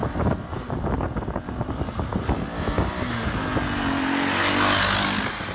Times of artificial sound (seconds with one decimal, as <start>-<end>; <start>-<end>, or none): none